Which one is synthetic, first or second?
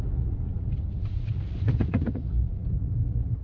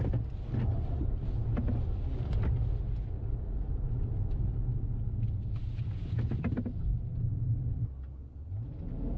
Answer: first